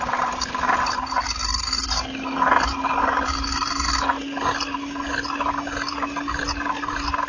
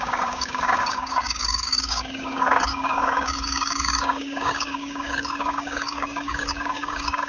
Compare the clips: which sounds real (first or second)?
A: first